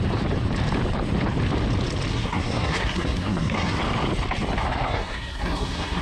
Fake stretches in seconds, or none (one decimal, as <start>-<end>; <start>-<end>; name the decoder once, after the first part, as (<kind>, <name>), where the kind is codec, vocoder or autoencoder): 2.1-3.8 (codec, SNAC); 4.6-6.0